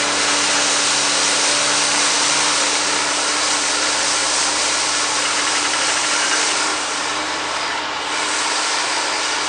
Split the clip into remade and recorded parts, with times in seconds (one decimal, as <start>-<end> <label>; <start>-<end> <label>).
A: 0.0-1.9 recorded; 1.9-3.5 remade; 3.5-4.2 recorded; 4.2-7.8 remade; 7.8-9.5 recorded